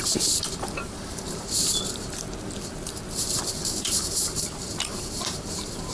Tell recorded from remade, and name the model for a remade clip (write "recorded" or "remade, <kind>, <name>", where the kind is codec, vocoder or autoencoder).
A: remade, vocoder, BigVGAN v2